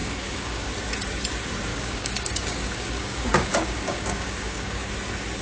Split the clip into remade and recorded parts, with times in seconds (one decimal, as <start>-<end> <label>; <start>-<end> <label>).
0.0-0.7 remade; 0.7-1.7 recorded; 1.7-4.9 remade; 4.9-5.4 recorded